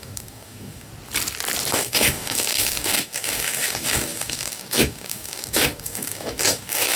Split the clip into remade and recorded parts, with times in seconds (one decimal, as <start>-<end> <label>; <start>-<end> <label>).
0.0-0.9 remade; 0.9-1.7 recorded; 1.7-7.0 remade